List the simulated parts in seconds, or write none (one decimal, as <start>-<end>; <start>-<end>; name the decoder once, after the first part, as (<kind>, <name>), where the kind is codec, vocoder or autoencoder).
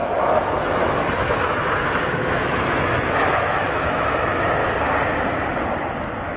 0.0-4.6 (autoencoder, DAC-VAE)